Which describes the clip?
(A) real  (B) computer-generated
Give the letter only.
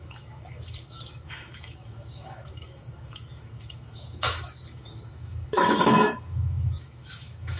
B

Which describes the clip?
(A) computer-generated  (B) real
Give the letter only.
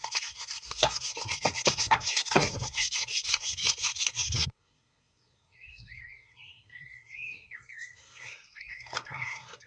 A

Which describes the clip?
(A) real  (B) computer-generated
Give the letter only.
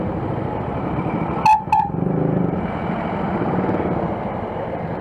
A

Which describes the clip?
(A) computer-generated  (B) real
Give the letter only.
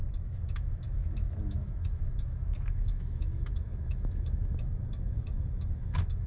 A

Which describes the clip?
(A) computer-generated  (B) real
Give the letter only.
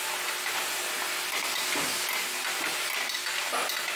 B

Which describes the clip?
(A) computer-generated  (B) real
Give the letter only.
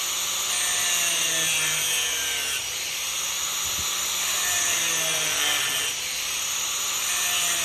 B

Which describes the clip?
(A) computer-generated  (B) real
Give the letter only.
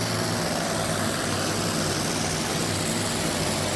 B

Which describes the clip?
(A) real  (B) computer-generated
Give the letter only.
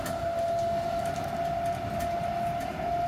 A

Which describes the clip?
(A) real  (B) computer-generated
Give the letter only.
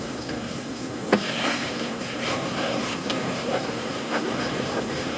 B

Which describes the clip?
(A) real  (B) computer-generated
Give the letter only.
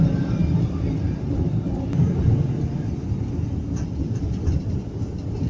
A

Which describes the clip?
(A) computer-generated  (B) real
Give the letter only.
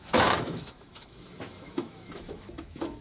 A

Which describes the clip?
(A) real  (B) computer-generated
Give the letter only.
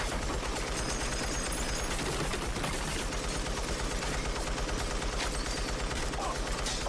A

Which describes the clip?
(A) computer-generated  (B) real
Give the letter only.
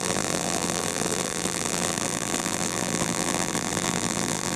A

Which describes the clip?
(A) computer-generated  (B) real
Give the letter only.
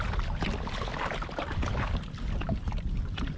B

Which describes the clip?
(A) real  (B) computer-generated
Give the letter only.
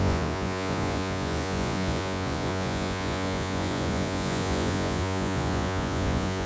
B